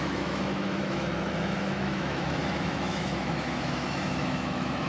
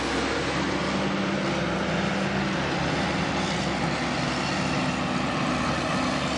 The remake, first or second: first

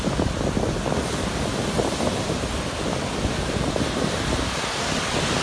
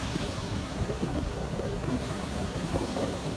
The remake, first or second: second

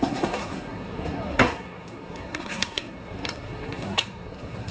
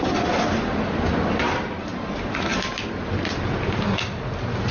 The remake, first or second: first